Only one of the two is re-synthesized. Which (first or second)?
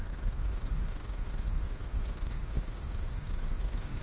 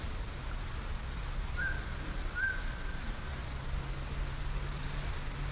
first